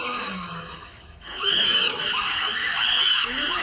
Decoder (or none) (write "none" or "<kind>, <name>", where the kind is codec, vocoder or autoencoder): autoencoder, DAC-VAE